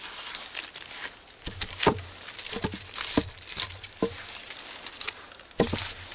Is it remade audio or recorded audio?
recorded